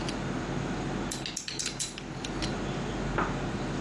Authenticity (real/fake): real